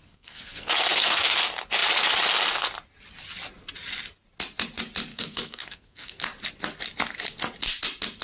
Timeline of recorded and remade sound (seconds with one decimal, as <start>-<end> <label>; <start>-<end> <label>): 0.0-1.4 remade; 1.4-5.1 recorded; 5.1-6.2 remade; 6.2-8.2 recorded